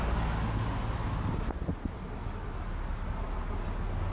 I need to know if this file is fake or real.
real